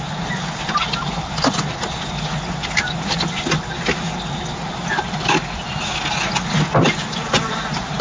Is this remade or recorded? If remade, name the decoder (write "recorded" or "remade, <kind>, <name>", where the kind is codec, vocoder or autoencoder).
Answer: recorded